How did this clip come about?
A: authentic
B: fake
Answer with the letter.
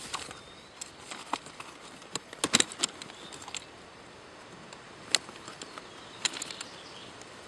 A